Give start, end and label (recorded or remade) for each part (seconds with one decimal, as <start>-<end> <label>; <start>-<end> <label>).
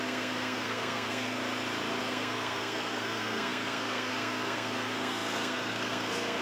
0.0-1.4 remade; 1.4-2.0 recorded; 2.0-6.4 remade